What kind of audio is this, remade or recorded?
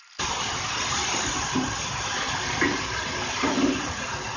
recorded